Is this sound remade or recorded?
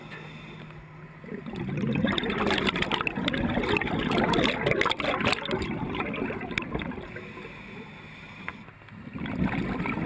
recorded